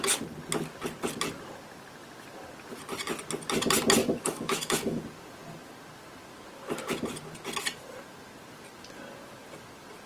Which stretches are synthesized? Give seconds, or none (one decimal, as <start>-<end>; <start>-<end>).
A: 4.0-5.0

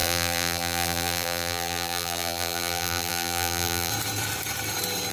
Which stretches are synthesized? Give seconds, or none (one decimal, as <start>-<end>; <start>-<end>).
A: 0.0-3.9

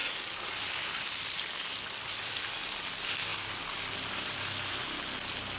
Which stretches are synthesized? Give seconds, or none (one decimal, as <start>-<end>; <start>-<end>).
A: none

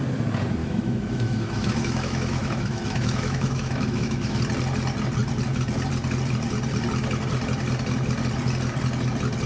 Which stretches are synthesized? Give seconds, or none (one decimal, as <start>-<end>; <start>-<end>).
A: 0.6-4.4

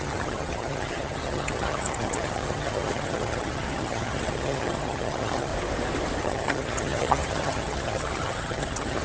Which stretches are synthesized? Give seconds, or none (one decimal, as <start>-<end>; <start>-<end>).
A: 0.0-5.5; 6.2-9.0